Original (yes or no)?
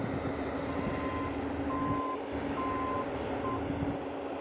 yes